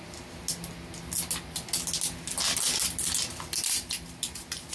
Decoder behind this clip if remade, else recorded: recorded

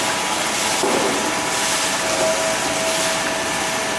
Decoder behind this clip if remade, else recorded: remade, vocoder, BigVGAN v2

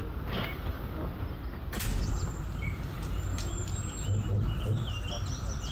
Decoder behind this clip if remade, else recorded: recorded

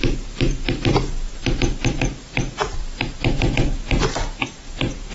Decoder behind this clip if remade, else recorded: remade, vocoder, BigVGAN v2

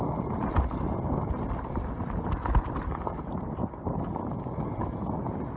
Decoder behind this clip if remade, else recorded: recorded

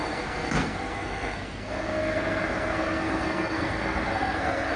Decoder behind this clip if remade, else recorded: remade, codec, SNAC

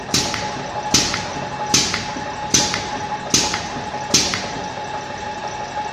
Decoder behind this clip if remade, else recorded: recorded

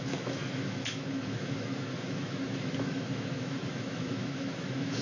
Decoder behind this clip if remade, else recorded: remade, autoencoder, DAC-VAE